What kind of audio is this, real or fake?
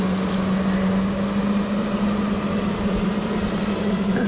real